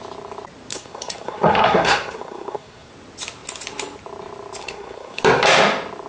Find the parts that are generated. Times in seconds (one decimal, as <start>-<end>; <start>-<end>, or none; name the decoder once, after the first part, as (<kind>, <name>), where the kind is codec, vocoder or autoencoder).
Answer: 0.7-2.9 (codec, SNAC); 4.6-5.2